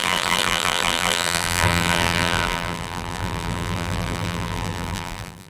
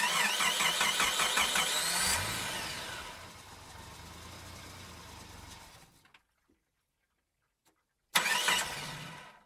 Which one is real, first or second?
second